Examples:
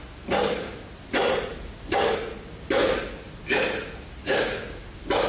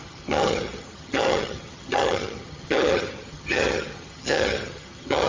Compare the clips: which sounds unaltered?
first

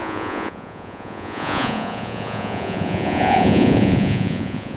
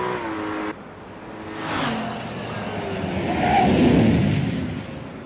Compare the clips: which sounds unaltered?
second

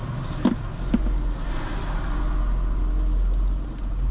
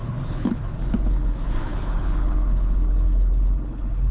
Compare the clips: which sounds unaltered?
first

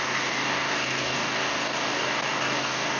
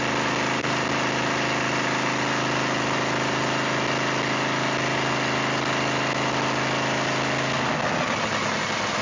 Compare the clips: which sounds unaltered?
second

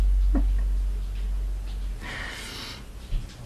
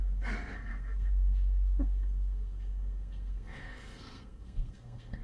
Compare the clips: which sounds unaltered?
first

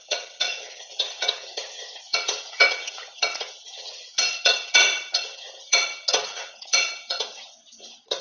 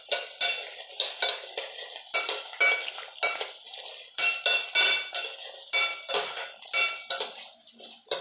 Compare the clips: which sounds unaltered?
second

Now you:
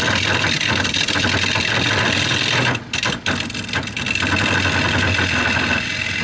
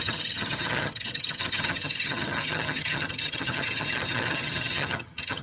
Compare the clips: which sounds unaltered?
first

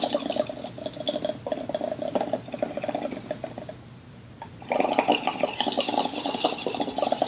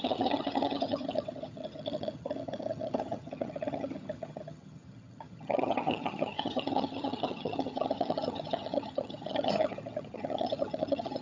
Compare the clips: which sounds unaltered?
first